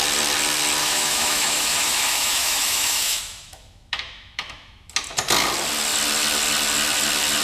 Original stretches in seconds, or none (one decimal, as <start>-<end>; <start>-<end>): 0.0-0.8; 4.9-7.4